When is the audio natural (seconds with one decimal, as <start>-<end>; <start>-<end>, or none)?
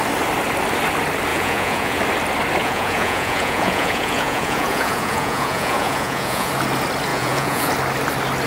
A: 0.0-1.3; 2.0-2.6; 6.5-7.1; 7.7-8.5